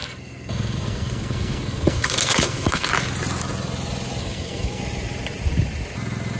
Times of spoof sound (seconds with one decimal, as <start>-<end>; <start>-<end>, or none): 0.0-2.9; 4.2-4.8